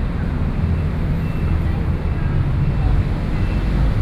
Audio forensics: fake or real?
real